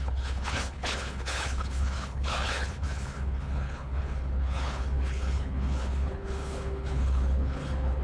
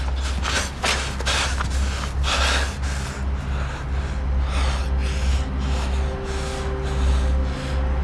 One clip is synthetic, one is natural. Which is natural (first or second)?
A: second